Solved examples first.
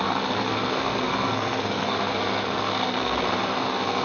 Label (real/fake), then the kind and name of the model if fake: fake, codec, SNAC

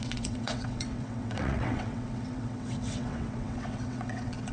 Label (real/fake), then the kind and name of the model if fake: fake, vocoder, WaveNeXt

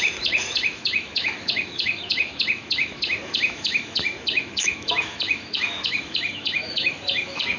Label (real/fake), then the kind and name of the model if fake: fake, autoencoder, DAC-VAE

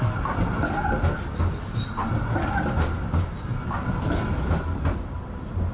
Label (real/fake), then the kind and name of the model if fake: real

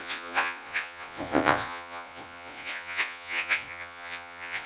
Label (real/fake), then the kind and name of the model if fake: fake, vocoder, Vocos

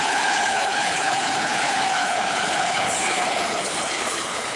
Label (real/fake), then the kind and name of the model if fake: fake, codec, HILCodec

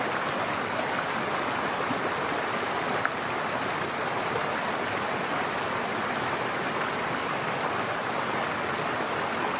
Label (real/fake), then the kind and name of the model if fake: real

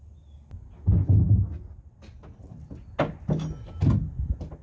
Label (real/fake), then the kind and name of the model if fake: real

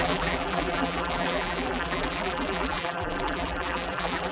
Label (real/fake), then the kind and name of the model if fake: fake, vocoder, BigVGAN v2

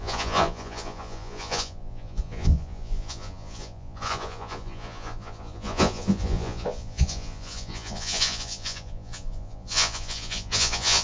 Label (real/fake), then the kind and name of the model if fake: fake, vocoder, Vocos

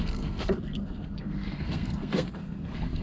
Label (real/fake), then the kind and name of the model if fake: fake, codec, SNAC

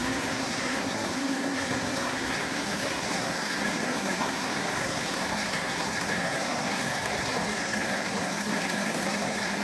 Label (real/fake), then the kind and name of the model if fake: fake, codec, SNAC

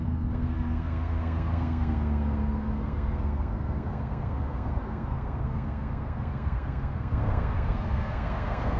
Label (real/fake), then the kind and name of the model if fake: fake, codec, SNAC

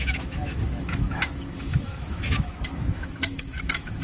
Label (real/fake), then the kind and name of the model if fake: fake, autoencoder, DAC-VAE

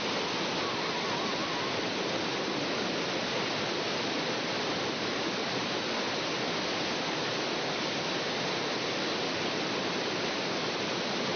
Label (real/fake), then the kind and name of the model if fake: real